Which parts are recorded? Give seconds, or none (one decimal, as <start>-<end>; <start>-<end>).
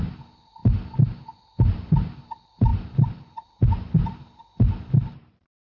0.6-1.4